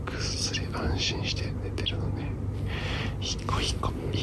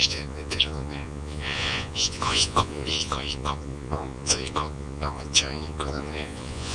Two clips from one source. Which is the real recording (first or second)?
first